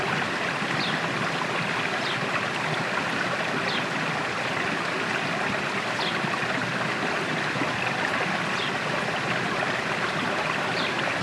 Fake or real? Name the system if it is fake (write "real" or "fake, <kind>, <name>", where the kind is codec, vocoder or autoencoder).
real